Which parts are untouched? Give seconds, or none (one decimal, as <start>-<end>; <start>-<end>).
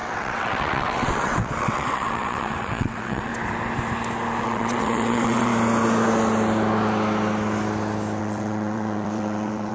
3.3-4.4; 5.5-8.2